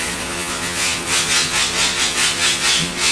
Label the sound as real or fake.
fake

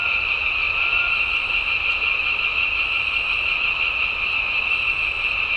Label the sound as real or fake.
real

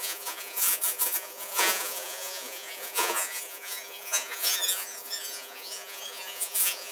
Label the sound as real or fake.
fake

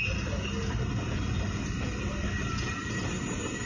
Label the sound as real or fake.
real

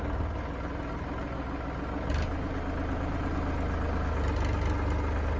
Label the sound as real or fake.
real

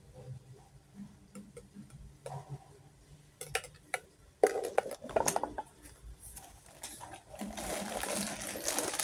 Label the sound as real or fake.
real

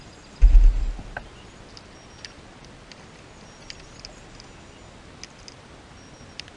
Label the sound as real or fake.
real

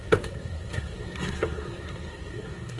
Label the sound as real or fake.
fake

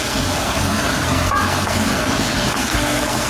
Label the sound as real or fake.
fake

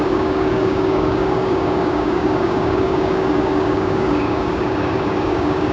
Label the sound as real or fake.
fake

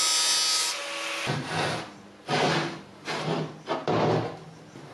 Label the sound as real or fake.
real